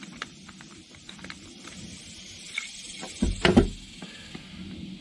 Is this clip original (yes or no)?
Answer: no